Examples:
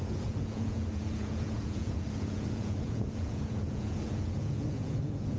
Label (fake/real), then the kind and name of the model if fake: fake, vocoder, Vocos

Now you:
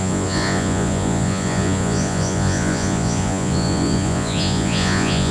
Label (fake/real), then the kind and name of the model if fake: fake, vocoder, Vocos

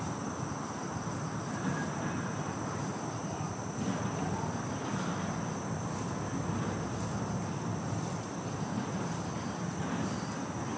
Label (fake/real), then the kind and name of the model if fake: real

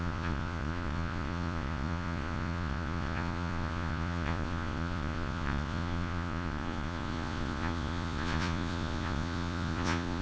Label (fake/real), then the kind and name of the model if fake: fake, vocoder, Vocos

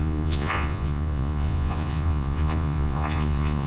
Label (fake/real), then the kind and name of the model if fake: fake, vocoder, Vocos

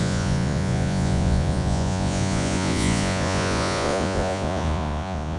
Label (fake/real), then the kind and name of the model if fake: fake, vocoder, Vocos